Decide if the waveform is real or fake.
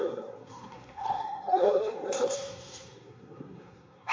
fake